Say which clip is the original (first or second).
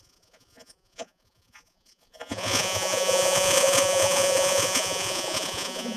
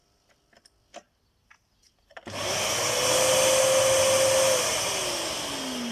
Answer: second